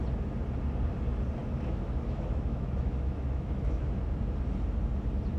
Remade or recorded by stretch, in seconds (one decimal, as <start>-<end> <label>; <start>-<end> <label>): 0.0-1.4 recorded; 1.4-4.0 remade; 4.0-5.4 recorded